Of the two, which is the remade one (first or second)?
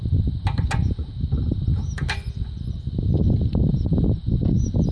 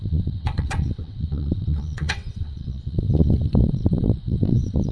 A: second